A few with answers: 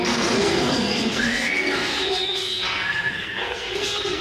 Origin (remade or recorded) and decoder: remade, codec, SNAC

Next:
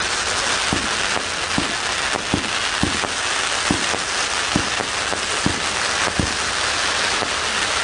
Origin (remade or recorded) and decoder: recorded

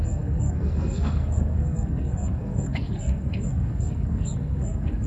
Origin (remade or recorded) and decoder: remade, codec, SNAC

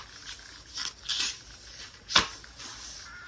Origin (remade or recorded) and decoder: recorded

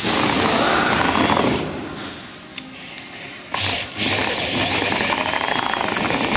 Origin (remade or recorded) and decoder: recorded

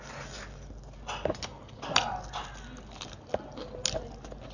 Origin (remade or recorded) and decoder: recorded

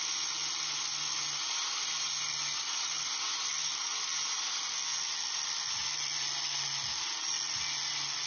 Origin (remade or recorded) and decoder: recorded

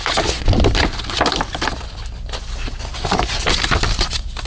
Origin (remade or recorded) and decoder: recorded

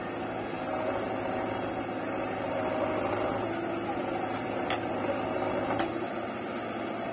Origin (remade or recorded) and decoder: recorded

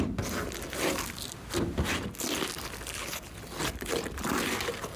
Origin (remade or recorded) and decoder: recorded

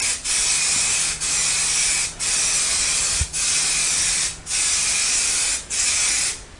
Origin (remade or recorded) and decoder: recorded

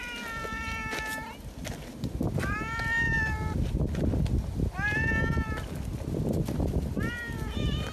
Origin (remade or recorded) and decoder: recorded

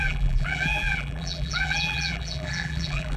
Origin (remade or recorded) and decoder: remade, vocoder, BigVGAN v2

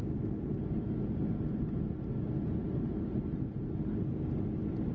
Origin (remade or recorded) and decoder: recorded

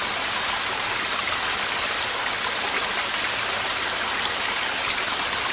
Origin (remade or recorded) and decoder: recorded